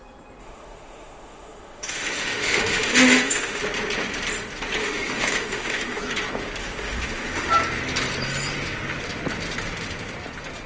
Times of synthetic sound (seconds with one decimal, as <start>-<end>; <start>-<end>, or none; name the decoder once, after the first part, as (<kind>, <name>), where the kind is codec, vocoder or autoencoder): 0.4-3.6 (autoencoder, DAC-VAE); 4.8-6.0; 6.6-7.5